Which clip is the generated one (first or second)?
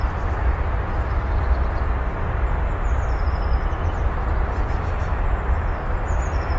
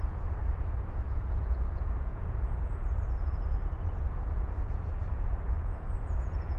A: second